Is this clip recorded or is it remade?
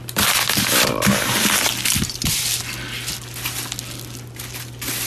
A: recorded